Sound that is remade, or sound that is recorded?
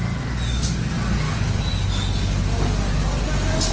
recorded